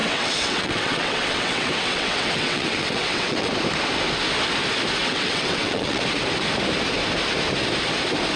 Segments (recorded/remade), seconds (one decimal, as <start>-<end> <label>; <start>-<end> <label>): 0.0-3.5 remade; 3.5-5.0 recorded; 5.0-6.0 remade; 6.0-8.4 recorded